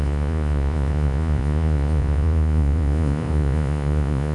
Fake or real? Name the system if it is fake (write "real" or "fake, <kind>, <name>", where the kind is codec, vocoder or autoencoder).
fake, vocoder, Vocos